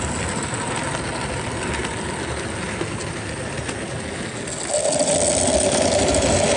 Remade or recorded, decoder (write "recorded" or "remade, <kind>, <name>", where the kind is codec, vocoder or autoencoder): recorded